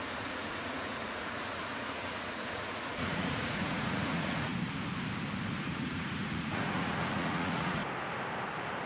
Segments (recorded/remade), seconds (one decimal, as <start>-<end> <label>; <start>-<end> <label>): 0.0-4.5 remade; 4.5-5.6 recorded; 5.6-7.8 remade; 7.8-8.9 recorded